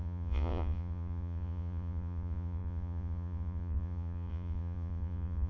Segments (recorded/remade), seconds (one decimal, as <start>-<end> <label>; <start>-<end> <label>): 0.0-5.5 remade